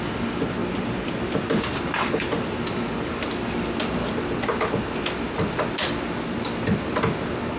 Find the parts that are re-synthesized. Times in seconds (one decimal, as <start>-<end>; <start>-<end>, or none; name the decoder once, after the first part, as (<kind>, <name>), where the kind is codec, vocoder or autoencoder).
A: 0.6-2.5 (vocoder, BigVGAN v2)